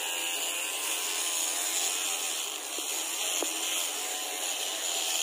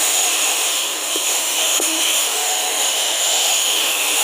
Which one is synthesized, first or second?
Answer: second